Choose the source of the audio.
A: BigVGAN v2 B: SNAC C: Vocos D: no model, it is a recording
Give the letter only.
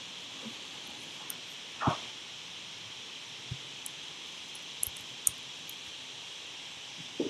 A